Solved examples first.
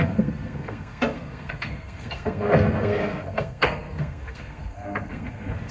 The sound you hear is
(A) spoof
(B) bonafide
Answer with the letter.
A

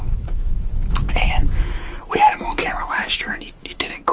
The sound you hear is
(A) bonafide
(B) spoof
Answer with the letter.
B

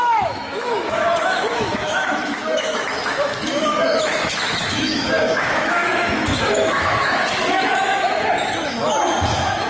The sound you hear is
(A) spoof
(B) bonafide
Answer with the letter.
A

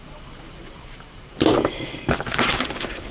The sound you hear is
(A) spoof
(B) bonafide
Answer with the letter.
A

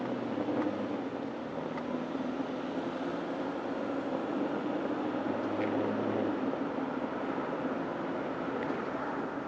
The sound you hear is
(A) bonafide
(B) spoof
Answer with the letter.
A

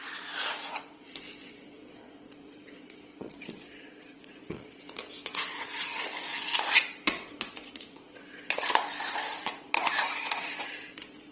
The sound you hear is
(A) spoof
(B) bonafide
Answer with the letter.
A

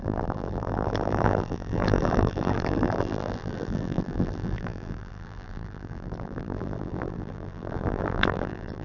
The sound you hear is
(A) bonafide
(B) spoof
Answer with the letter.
B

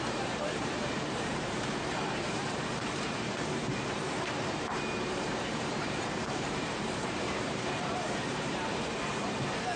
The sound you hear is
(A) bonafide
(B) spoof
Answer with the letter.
B